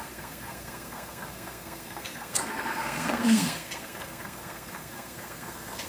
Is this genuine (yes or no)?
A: no